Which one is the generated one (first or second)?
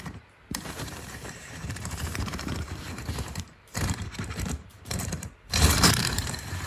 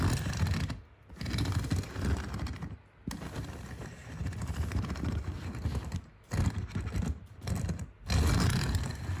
first